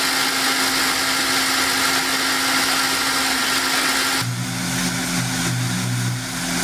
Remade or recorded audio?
recorded